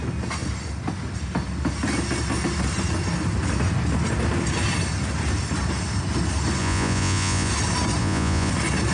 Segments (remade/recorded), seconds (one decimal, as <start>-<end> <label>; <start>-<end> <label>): 0.0-6.6 recorded; 6.6-7.5 remade; 7.5-8.0 recorded; 8.0-8.5 remade; 8.5-8.9 recorded